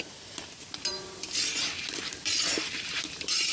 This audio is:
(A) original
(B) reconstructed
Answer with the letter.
B